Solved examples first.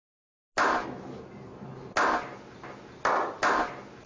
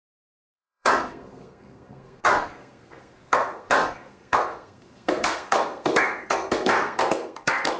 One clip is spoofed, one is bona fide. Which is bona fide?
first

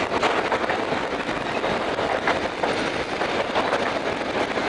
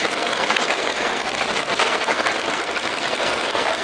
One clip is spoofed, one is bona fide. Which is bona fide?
first